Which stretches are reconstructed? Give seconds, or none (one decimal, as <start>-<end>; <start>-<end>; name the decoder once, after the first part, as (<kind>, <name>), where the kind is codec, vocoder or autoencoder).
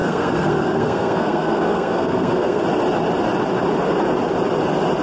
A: 0.0-2.6 (codec, SNAC)